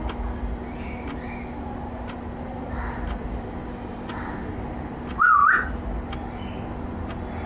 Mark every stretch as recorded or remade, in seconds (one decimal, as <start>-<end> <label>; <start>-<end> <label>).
0.0-7.5 recorded